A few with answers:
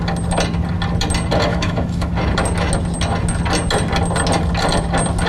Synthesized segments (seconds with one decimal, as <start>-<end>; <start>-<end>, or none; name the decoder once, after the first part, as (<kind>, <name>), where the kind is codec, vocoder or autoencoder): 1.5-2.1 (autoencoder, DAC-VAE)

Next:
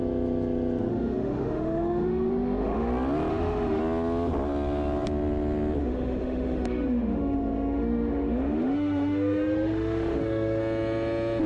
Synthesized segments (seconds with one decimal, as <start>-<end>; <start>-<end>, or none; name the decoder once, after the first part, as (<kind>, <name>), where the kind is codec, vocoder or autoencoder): 0.9-2.9 (autoencoder, DAC-VAE); 3.3-3.8; 5.8-10.6

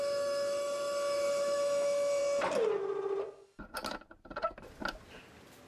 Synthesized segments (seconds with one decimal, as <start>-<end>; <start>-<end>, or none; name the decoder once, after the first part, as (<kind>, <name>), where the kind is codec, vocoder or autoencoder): 0.0-2.2 (autoencoder, DAC-VAE)

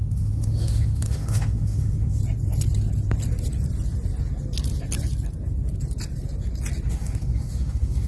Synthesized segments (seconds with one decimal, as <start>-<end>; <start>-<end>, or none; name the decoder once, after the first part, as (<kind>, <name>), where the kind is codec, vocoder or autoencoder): 0.0-2.2 (autoencoder, DAC-VAE); 6.9-8.1

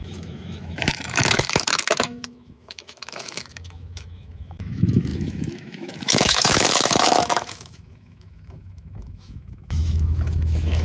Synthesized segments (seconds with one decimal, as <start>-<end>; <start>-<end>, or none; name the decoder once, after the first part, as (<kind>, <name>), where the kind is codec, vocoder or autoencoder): 0.0-10.8 (autoencoder, DAC-VAE)